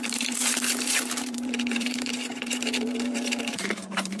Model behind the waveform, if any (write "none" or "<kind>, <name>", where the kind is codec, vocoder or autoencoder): vocoder, BigVGAN v2